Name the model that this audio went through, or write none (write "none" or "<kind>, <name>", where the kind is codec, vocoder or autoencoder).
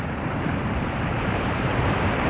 vocoder, BigVGAN v2